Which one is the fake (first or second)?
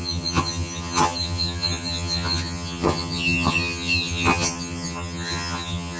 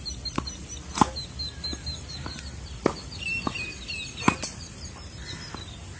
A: first